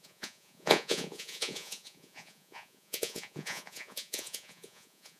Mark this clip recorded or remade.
remade